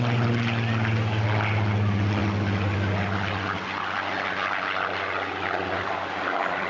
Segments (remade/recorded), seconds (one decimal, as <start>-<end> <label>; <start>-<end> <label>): 0.0-6.7 recorded

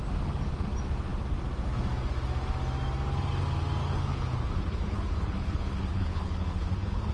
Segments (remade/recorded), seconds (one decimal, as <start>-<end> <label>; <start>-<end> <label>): 0.0-3.8 recorded; 3.8-7.1 remade

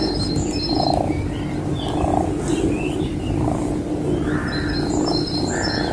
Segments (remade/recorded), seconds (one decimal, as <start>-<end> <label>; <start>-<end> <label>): 0.0-5.9 recorded

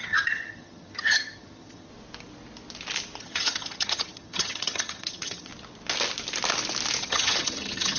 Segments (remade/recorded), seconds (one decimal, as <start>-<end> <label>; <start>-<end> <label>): 0.0-1.9 remade; 1.9-3.2 recorded; 3.2-5.5 remade; 5.5-7.0 recorded; 7.0-8.0 remade

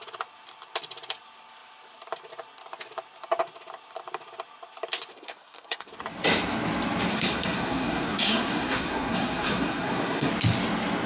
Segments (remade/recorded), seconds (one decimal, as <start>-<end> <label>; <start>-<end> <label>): 0.0-5.1 recorded; 5.1-5.9 remade; 5.9-7.1 recorded; 7.1-10.3 remade; 10.3-11.1 recorded

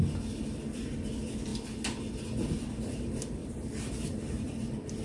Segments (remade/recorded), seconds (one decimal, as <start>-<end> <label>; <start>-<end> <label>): 0.0-3.4 recorded; 3.4-5.0 remade